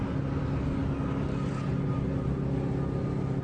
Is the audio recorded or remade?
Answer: recorded